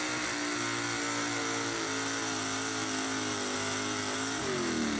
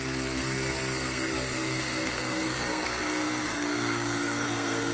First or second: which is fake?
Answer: second